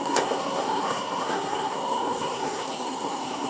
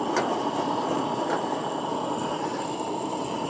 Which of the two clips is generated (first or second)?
first